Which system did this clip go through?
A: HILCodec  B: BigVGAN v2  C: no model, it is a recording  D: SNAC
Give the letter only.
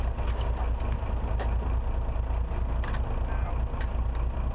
C